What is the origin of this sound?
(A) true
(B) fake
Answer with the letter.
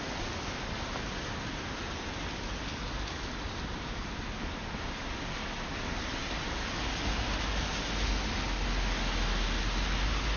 A